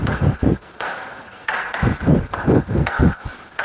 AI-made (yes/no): yes